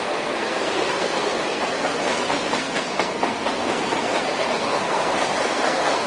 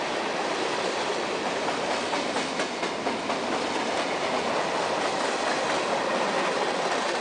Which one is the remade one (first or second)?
first